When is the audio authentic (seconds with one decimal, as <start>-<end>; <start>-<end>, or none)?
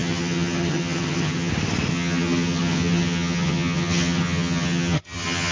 1.5-1.9